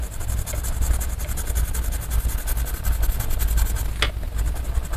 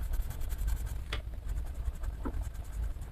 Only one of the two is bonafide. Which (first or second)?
first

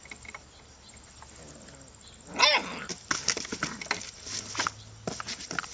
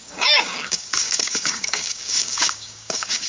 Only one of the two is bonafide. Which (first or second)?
first